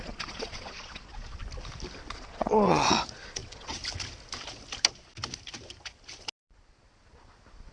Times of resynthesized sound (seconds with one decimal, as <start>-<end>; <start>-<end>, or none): 0.0-1.4; 2.1-3.8